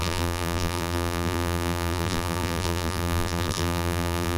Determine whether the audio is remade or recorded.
remade